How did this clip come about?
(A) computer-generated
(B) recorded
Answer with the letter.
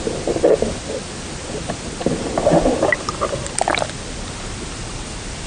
B